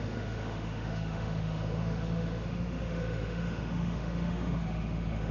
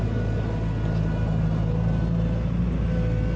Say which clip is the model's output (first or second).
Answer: first